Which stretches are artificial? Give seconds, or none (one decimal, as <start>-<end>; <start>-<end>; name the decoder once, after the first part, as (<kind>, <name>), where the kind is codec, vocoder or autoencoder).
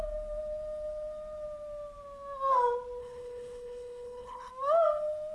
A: 3.0-4.5 (codec, HILCodec)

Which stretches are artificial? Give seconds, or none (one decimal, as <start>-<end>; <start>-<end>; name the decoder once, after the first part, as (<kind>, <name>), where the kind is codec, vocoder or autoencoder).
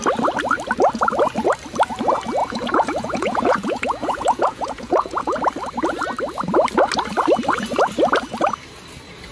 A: 2.4-5.4 (vocoder, Vocos)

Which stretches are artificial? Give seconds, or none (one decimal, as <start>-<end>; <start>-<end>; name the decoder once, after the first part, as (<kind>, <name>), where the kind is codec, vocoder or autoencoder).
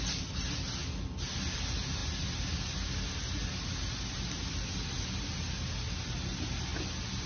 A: none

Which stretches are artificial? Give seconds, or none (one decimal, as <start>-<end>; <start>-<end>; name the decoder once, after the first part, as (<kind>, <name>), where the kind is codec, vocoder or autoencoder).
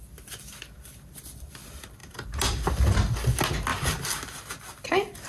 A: none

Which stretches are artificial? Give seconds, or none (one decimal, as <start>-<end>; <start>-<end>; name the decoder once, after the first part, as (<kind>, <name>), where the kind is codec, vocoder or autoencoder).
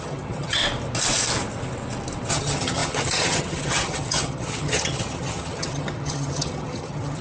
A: 0.0-0.6 (vocoder, HiFi-GAN); 2.3-7.2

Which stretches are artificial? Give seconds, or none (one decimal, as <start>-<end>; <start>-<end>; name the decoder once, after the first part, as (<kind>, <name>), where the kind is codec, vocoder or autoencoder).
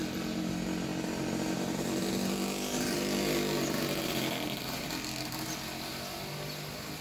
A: none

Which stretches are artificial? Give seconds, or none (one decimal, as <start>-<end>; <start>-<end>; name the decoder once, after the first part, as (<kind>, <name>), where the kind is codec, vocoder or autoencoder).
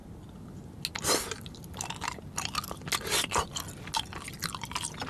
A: none